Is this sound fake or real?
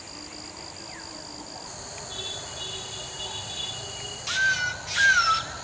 real